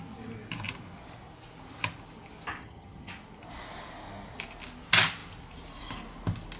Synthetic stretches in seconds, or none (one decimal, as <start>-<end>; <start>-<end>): 2.6-3.1